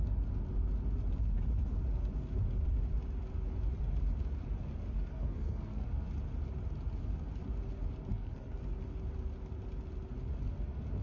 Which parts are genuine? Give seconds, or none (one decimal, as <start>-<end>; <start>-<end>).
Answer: 0.0-5.1; 6.1-8.1; 8.6-11.0